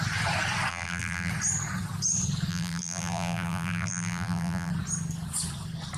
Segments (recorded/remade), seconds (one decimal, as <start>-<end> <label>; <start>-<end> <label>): 0.0-0.7 recorded; 0.7-1.3 remade; 1.3-2.5 recorded; 2.5-4.7 remade; 4.7-6.0 recorded